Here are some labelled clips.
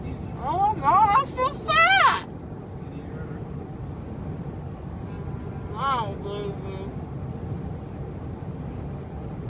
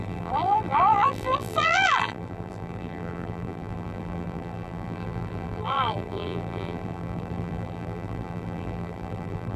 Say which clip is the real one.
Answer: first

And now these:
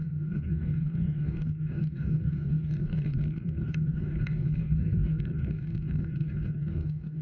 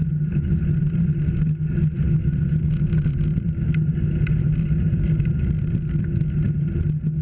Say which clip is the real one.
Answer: second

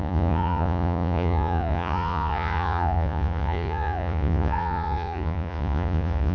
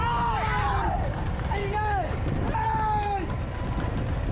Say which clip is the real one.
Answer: second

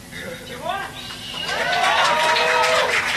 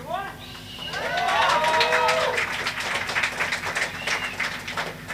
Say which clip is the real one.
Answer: second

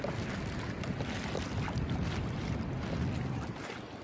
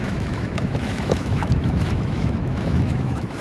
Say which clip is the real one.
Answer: first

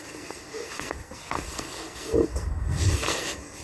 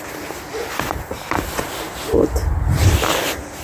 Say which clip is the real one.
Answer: second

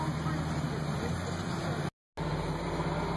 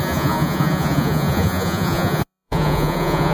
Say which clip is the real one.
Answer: first